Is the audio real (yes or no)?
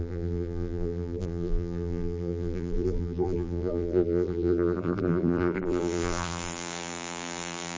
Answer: no